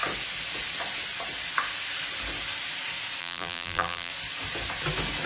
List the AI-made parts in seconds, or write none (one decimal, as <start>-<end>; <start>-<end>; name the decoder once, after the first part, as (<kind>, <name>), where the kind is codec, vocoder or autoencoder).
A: 3.2-4.1 (vocoder, BigVGAN v2)

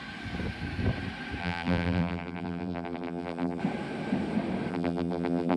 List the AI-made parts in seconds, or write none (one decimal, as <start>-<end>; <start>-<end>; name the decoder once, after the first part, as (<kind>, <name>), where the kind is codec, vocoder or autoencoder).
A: 1.4-3.6 (vocoder, BigVGAN v2); 4.7-5.6

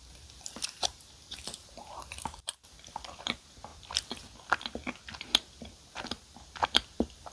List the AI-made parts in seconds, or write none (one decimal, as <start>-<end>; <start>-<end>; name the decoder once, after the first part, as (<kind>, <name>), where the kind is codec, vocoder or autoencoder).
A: 0.0-3.7 (vocoder, BigVGAN v2); 5.2-7.3

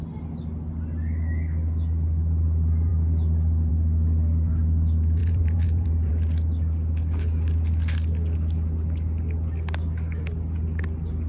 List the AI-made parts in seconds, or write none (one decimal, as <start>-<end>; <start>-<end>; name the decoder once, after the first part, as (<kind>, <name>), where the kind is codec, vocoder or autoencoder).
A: 5.2-6.1 (vocoder, BigVGAN v2)

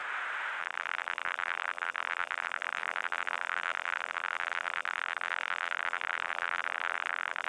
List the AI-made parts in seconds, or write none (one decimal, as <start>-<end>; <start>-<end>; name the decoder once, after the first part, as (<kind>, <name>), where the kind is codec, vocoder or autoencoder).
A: 0.6-7.5 (vocoder, BigVGAN v2)

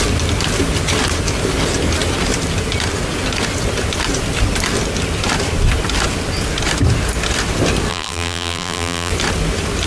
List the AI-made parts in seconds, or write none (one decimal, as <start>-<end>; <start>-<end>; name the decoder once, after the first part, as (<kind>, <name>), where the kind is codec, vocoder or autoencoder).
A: 7.9-9.1 (vocoder, BigVGAN v2)